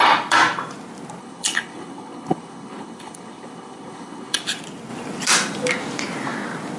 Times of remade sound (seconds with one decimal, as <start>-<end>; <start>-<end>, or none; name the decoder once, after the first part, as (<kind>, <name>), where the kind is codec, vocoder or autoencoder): 1.2-4.4 (codec, HILCodec)